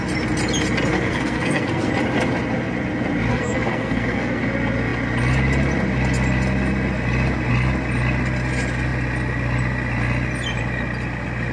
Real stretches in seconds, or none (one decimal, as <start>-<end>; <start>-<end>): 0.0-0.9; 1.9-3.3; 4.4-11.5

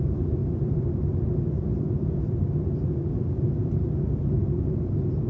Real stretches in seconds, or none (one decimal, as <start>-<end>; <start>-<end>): 0.0-5.3

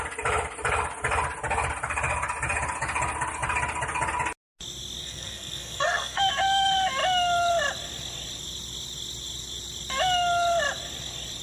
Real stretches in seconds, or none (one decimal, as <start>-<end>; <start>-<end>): 0.0-5.0; 6.2-11.4

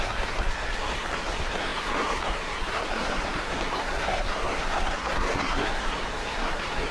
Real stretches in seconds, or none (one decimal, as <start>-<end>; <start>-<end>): none

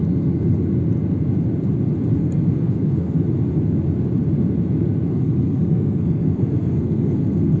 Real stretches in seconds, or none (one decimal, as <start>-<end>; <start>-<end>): 0.0-2.2; 3.1-5.1

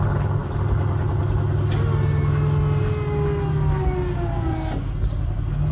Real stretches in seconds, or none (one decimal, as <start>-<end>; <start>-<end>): 0.0-5.7

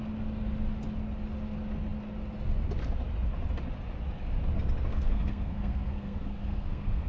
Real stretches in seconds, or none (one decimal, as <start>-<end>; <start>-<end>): 0.0-4.9

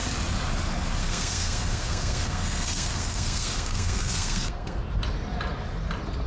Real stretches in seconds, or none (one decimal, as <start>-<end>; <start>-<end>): 0.0-1.0; 4.8-6.3